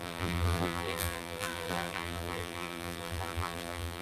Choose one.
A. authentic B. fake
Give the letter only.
B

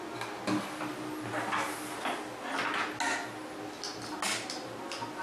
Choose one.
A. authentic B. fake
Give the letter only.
A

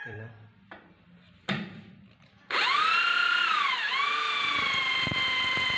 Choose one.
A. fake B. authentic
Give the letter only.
A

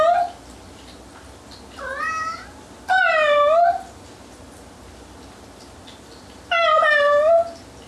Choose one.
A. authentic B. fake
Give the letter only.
A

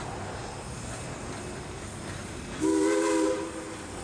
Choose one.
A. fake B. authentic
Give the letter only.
B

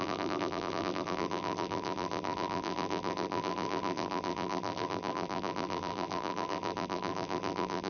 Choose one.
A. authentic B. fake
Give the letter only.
B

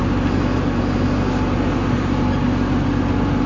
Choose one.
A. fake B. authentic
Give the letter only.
B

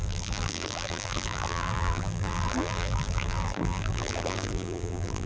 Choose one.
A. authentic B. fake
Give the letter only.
B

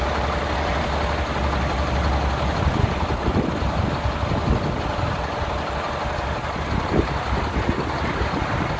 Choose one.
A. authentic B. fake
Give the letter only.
A